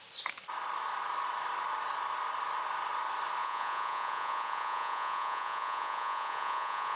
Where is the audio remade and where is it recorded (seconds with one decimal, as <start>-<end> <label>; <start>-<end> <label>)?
0.0-3.4 recorded; 3.4-7.0 remade